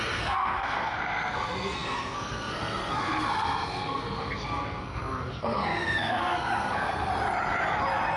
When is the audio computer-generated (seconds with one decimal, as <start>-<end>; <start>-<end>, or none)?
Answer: 0.0-7.1